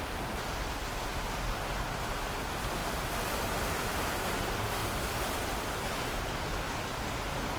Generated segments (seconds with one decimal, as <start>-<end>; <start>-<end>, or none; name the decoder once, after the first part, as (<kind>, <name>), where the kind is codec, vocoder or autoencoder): none